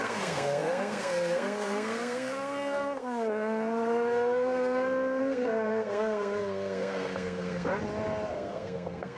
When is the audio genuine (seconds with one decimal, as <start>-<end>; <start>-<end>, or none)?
7.7-8.3

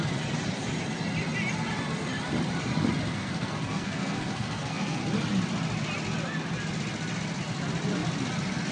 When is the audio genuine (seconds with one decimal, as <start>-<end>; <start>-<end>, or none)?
0.0-3.1; 5.0-8.7

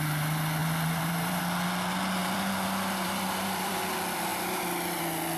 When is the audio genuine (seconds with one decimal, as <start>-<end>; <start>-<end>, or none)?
0.0-0.6; 1.4-2.2; 3.8-5.4

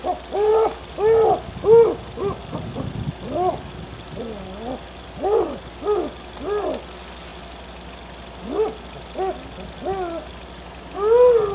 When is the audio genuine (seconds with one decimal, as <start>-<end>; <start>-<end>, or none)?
0.0-11.5

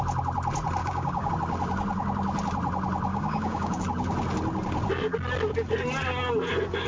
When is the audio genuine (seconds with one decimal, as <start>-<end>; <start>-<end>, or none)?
0.0-0.8; 1.3-3.1; 3.8-6.9